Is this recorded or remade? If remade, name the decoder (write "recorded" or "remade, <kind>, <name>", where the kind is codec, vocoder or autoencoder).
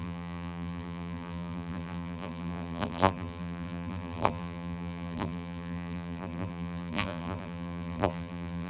remade, vocoder, BigVGAN v2